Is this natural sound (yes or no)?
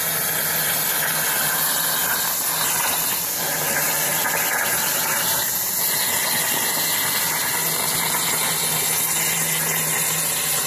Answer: yes